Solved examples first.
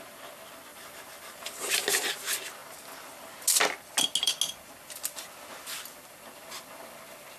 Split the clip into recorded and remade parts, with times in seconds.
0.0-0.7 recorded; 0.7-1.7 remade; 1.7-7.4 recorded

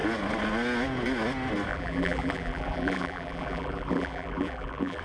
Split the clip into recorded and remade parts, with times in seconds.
0.0-1.7 recorded; 1.7-5.0 remade